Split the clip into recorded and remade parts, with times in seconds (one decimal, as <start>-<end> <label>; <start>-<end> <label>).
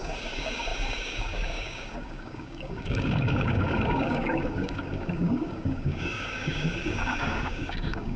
0.0-8.2 remade